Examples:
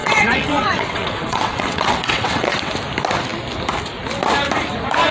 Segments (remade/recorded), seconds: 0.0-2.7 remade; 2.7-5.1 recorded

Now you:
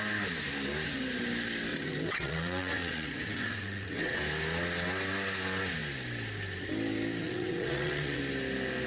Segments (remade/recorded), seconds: 0.0-1.7 recorded; 1.7-4.2 remade; 4.2-7.2 recorded; 7.2-8.2 remade; 8.2-8.9 recorded

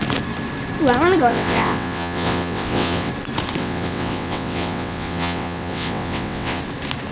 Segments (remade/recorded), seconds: 0.0-1.3 recorded; 1.3-3.1 remade; 3.1-3.6 recorded; 3.6-6.6 remade; 6.6-7.1 recorded

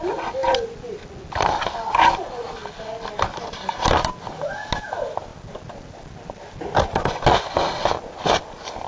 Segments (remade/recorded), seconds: 0.0-8.9 recorded

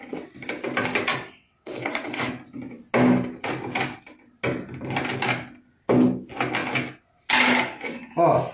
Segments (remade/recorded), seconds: 0.0-1.1 recorded; 1.1-2.2 remade; 2.2-8.5 recorded

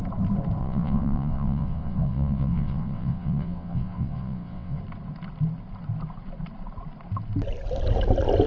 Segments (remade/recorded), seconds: 0.0-0.6 recorded; 0.6-4.8 remade; 4.8-8.5 recorded

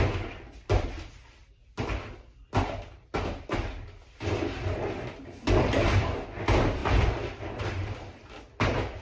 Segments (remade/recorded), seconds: 0.0-9.0 recorded